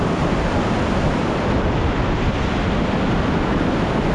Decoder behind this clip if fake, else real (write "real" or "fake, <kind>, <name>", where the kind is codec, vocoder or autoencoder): real